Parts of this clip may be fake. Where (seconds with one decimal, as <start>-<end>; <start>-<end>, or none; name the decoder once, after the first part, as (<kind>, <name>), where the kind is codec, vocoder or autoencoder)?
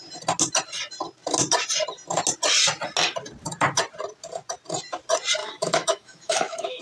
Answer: 5.4-6.8 (autoencoder, DAC-VAE)